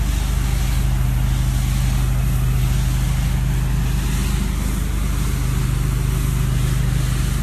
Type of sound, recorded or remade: recorded